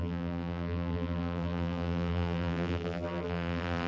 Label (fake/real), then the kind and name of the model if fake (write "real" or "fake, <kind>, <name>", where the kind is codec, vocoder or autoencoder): fake, vocoder, BigVGAN v2